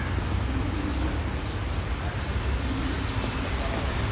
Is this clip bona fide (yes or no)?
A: yes